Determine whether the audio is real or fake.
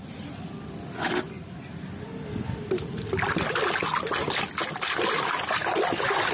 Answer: real